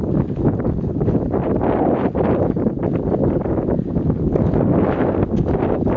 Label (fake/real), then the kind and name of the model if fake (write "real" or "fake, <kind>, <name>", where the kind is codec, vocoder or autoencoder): real